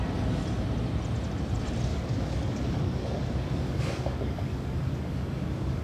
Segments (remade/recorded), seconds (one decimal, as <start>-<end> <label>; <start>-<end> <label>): 0.0-1.9 recorded; 1.9-5.8 remade